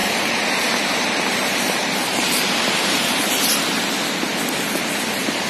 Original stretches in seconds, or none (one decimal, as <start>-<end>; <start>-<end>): 3.3-5.5